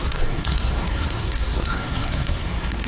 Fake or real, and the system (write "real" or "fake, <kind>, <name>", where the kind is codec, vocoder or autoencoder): fake, codec, SNAC